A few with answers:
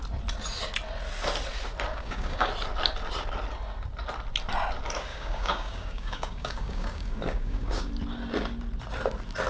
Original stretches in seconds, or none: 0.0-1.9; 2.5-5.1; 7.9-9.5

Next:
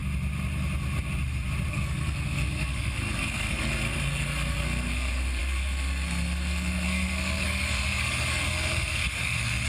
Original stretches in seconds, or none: 0.0-1.7

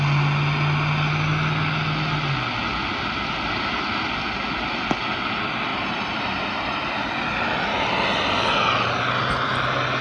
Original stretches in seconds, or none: 0.0-5.7; 6.9-10.0

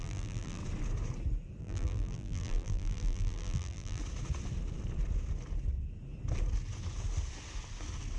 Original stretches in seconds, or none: 0.6-1.6; 4.0-8.2

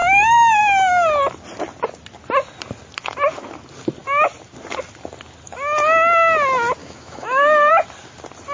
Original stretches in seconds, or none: 0.6-6.8; 7.7-8.5

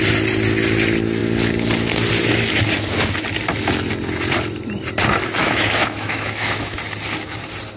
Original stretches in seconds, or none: 0.0-5.4; 6.8-7.8